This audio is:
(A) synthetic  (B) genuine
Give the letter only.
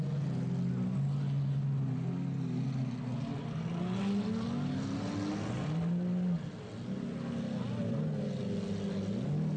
B